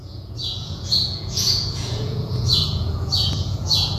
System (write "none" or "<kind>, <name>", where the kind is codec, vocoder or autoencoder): vocoder, Vocos